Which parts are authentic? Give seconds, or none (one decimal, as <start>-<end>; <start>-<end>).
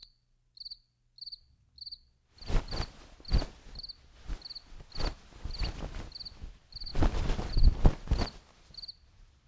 0.0-9.5